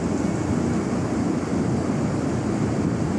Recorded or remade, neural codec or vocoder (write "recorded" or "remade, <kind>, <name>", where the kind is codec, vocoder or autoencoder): recorded